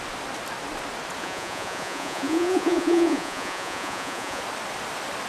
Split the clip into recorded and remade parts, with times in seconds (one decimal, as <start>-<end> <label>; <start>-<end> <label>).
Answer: 0.0-1.2 recorded; 1.2-4.4 remade; 4.4-5.3 recorded